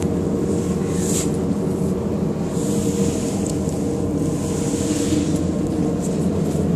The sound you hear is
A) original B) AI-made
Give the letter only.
A